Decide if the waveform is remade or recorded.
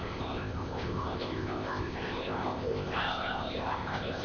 remade